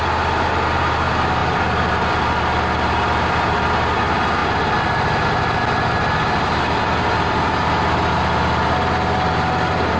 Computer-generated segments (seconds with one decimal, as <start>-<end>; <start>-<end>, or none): none